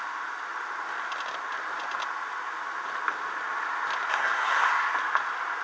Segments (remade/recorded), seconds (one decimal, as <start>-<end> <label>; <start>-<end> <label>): 0.0-4.1 recorded; 4.1-4.7 remade; 4.7-5.6 recorded